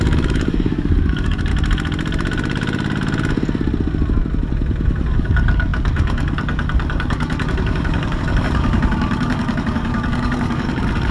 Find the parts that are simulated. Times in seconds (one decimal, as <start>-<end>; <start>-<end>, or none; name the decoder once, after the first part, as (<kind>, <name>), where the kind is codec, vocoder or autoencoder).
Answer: 0.0-1.5 (codec, DAC); 5.1-11.1